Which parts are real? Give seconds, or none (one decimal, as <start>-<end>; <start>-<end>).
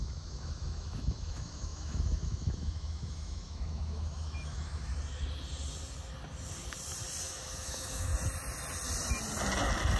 4.9-7.2; 8.1-10.0